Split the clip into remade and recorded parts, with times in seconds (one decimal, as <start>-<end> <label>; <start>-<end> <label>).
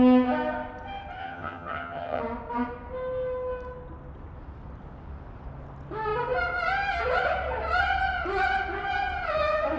0.0-1.2 recorded; 1.2-2.2 remade; 2.2-9.8 recorded